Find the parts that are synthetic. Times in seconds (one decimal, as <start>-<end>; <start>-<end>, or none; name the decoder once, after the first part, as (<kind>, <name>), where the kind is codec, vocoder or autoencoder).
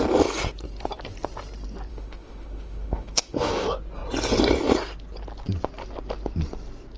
1.9-3.5 (autoencoder, DAC-VAE)